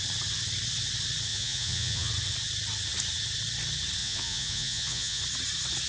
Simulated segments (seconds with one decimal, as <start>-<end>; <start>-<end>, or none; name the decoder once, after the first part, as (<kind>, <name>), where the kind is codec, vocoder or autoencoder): 1.3-2.1 (vocoder, Vocos); 4.0-5.2

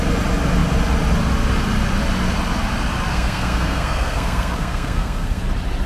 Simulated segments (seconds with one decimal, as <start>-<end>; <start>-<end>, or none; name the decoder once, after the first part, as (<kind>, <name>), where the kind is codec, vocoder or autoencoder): 3.1-5.4 (codec, SNAC)